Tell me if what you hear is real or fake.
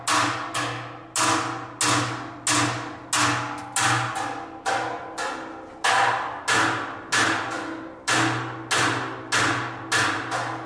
real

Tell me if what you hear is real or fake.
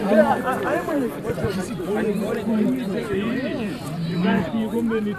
fake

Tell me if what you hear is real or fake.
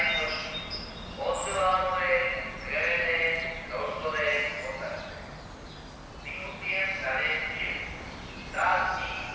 real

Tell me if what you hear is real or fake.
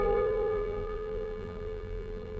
fake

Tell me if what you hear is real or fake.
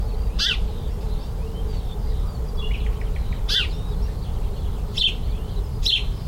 fake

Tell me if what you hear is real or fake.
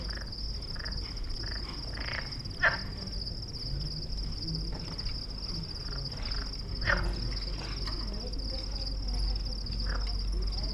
real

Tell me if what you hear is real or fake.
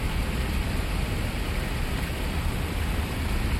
real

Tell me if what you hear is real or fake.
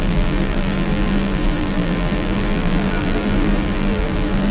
fake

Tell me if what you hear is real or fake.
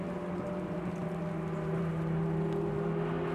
real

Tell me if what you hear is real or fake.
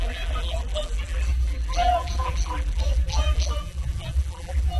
fake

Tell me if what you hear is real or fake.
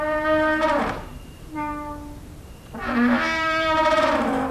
fake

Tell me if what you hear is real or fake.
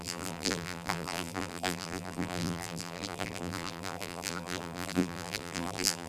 fake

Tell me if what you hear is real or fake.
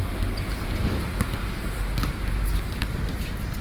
real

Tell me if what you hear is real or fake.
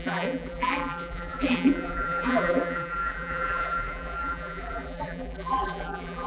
fake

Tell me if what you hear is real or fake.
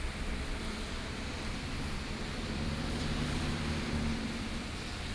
fake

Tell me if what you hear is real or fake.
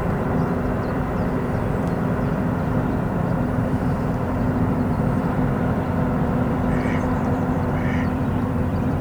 fake